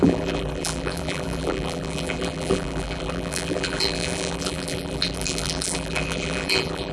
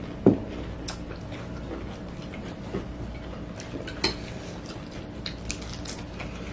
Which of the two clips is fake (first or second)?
first